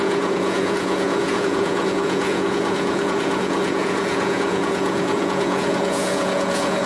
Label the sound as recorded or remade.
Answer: remade